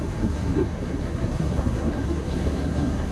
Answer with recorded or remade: remade